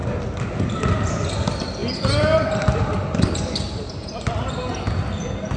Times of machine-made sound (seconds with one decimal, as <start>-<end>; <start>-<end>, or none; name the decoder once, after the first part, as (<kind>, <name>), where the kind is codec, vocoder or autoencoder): 1.8-4.6 (vocoder, BigVGAN v2)